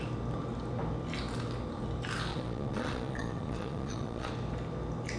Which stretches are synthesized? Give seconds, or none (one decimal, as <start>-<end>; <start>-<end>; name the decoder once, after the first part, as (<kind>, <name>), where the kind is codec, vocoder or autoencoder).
2.3-4.3 (vocoder, Vocos)